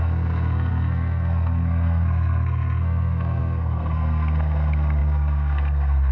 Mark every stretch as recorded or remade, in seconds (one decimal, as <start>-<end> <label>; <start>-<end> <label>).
0.0-6.1 remade